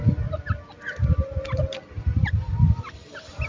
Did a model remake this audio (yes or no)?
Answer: no